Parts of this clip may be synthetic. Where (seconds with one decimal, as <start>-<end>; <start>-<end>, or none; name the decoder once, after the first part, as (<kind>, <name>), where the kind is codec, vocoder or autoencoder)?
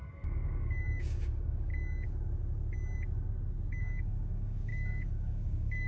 0.0-1.7 (codec, DAC); 3.8-5.9